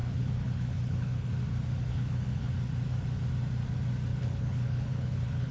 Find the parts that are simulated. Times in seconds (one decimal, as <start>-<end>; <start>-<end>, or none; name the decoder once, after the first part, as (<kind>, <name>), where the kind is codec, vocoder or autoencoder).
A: 0.0-1.3 (codec, HILCodec); 1.9-2.5; 4.1-5.5